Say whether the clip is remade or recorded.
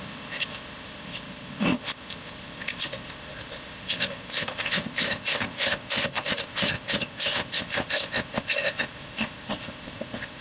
remade